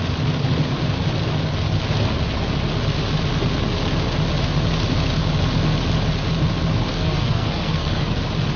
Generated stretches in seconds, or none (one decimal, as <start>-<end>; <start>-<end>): 6.9-8.2